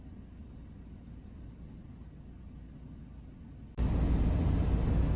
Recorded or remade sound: recorded